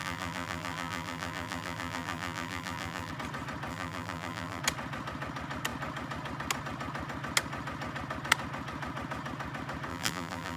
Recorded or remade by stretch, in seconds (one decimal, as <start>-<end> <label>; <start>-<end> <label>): 0.0-3.1 remade; 3.1-3.7 recorded; 3.7-4.6 remade; 4.6-9.9 recorded; 9.9-10.6 remade

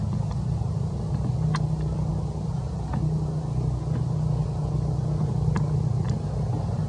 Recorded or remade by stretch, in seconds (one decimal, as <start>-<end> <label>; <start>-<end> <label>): 0.0-6.9 recorded

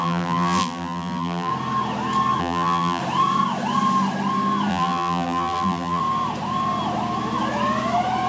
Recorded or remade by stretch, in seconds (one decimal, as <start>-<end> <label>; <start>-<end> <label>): 0.0-1.5 remade; 1.5-2.4 recorded; 2.4-3.0 remade; 3.0-4.7 recorded; 4.7-6.0 remade; 6.0-8.3 recorded

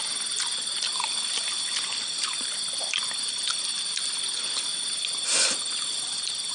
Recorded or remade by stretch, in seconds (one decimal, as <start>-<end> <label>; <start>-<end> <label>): 0.0-5.3 recorded; 5.3-6.5 remade

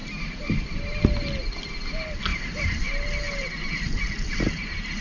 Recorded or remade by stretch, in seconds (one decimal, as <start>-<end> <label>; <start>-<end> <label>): 0.0-5.0 recorded

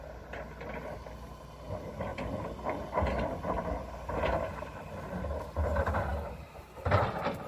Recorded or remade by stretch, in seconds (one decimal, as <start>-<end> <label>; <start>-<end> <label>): 0.0-2.1 recorded; 2.1-2.7 remade; 2.7-7.5 recorded

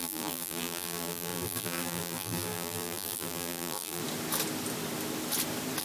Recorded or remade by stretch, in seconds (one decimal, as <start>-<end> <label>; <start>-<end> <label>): 0.0-4.0 remade; 4.0-5.8 recorded

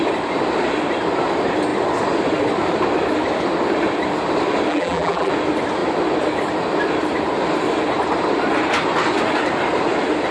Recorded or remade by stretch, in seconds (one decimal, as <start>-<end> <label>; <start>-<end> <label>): 0.0-4.7 recorded; 4.7-5.3 remade; 5.3-10.3 recorded